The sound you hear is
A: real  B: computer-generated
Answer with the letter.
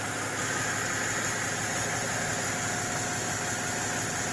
A